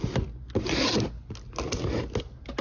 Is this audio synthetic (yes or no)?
no